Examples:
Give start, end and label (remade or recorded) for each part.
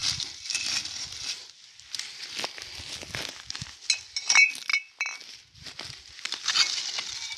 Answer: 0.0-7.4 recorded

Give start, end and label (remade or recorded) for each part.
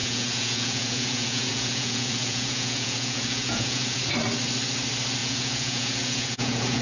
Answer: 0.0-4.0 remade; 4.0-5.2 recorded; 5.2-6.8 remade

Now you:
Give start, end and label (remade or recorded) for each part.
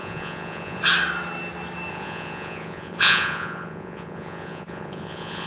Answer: 0.0-0.8 remade; 0.8-1.9 recorded; 1.9-5.5 remade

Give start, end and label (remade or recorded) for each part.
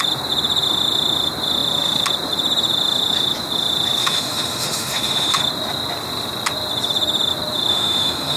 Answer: 0.0-4.0 recorded; 4.0-5.4 remade; 5.4-7.7 recorded; 7.7-8.4 remade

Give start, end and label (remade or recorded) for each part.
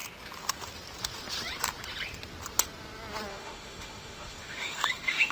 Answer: 0.0-3.3 recorded; 3.3-5.3 remade